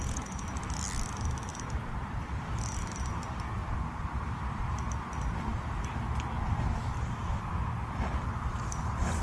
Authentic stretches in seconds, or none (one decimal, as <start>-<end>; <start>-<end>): 0.0-9.2